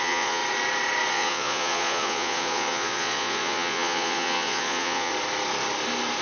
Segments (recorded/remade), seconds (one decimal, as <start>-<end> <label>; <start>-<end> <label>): 0.0-0.4 remade; 0.4-1.1 recorded; 1.1-5.1 remade; 5.1-6.2 recorded